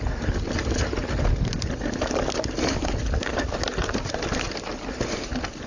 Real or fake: real